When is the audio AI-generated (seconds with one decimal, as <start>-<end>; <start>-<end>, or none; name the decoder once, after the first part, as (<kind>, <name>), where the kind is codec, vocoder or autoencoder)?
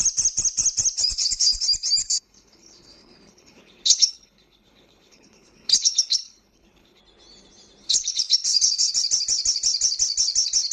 1.1-1.6 (codec, HILCodec); 2.0-7.0; 7.8-8.9